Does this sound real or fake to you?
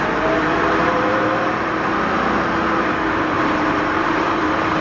fake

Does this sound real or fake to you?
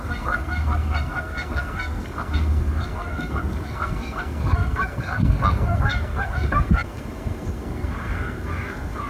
fake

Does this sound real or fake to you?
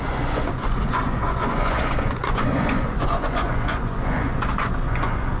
fake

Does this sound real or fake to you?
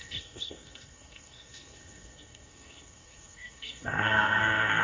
fake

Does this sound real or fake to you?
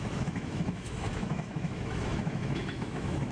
fake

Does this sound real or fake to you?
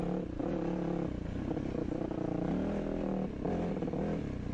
real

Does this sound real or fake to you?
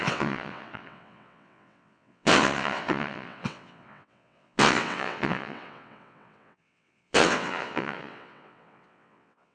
fake